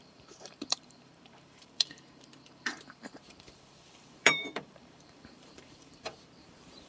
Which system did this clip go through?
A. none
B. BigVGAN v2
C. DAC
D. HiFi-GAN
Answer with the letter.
B